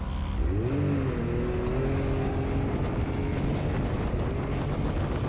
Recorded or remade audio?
recorded